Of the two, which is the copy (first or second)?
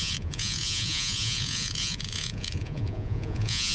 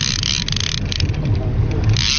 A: first